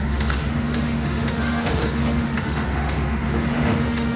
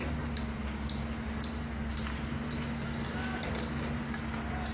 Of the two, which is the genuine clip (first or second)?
second